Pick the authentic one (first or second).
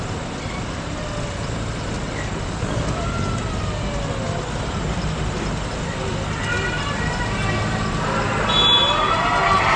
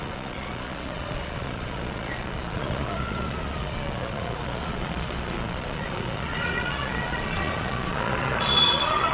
first